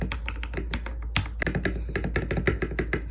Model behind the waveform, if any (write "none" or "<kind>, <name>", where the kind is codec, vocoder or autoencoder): none